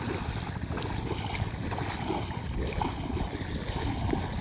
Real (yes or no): yes